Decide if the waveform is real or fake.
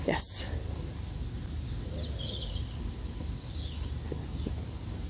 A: real